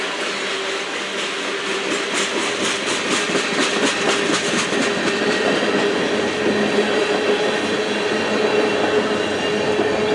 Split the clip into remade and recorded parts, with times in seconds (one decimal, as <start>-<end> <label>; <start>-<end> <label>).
0.0-1.7 recorded; 1.7-3.4 remade; 3.4-4.9 recorded; 4.9-5.6 remade; 5.6-10.1 recorded